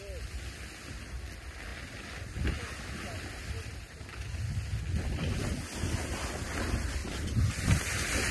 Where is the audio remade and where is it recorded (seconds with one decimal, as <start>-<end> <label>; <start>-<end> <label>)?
0.0-8.3 recorded